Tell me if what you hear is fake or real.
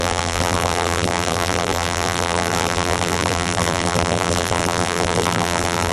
fake